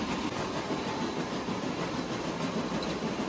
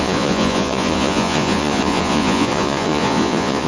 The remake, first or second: second